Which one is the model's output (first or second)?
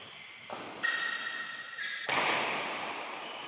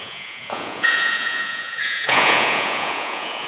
second